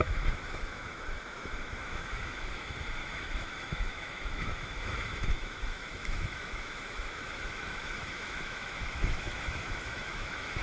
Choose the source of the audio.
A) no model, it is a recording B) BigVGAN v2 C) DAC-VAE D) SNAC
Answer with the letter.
C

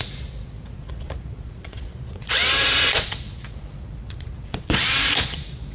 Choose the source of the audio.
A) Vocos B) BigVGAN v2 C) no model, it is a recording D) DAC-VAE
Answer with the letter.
A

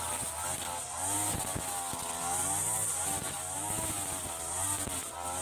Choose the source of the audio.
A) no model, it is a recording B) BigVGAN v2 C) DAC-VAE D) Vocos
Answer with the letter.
A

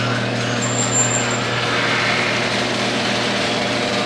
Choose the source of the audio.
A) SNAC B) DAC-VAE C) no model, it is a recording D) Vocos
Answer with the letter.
C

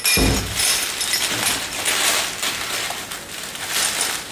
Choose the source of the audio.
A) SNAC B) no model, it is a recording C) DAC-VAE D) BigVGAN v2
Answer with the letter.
B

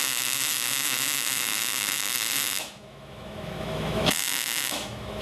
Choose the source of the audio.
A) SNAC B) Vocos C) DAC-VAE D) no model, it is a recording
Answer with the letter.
C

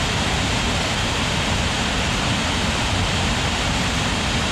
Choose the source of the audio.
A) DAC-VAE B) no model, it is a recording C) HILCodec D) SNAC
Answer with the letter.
B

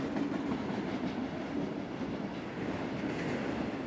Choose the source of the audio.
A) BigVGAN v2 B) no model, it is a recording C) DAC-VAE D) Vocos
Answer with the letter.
B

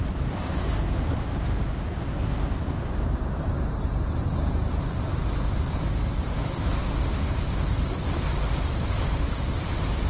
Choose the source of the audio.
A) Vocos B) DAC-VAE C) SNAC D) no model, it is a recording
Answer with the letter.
D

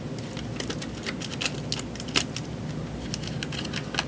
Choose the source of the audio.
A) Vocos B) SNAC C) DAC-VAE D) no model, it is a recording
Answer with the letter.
D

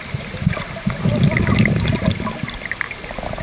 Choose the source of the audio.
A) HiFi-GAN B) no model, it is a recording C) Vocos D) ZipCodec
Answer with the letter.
B